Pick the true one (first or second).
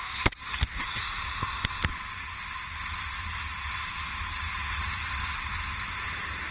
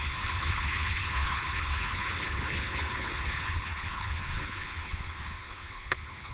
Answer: first